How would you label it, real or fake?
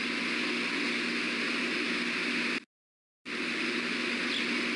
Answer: real